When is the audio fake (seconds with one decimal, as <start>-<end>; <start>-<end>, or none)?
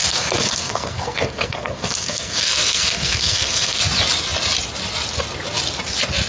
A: 0.0-3.8